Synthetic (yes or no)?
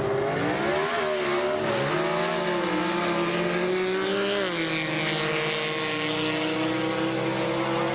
no